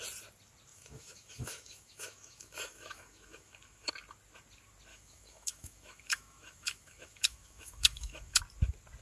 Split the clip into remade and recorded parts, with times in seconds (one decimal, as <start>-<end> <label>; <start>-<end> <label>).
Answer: 0.0-0.7 recorded; 0.7-3.9 remade; 3.9-4.9 recorded; 4.9-8.4 remade; 8.4-9.0 recorded